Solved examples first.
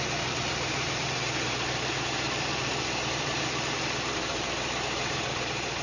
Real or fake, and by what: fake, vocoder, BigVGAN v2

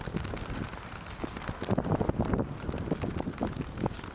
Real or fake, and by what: real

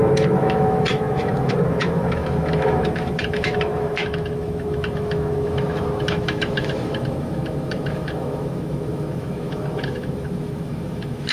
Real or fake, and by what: fake, autoencoder, DAC-VAE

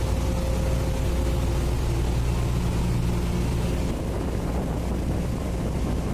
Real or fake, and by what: real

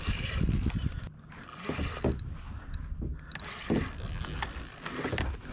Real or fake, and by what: real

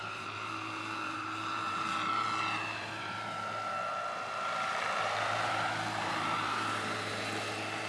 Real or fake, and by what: fake, vocoder, BigVGAN v2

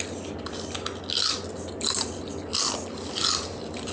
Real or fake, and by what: real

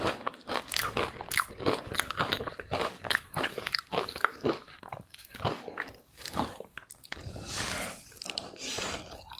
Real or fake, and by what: fake, codec, DAC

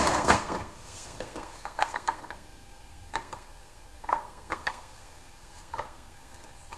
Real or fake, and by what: fake, codec, SNAC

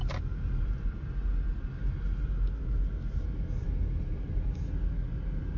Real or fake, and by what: real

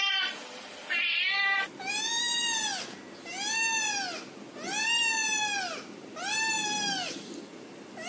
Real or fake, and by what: real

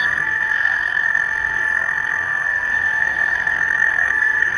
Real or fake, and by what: fake, codec, SNAC